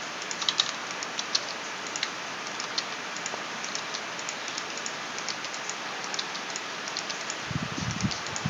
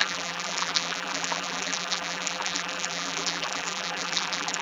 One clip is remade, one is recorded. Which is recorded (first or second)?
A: first